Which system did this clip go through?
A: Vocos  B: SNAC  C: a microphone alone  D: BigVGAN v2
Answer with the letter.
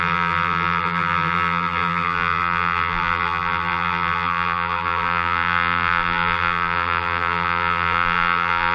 D